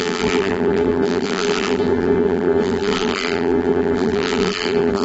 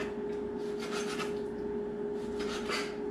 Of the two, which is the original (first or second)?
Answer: second